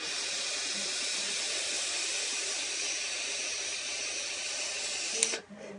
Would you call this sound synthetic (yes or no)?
no